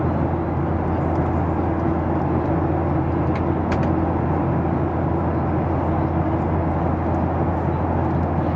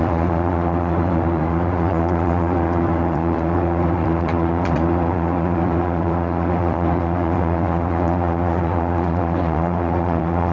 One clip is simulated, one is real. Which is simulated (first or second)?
second